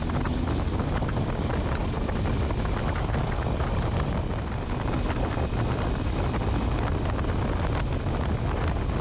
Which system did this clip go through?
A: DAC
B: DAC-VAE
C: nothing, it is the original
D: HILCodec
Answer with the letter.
C